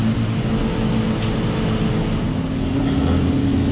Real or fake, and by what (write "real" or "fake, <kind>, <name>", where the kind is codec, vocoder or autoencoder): real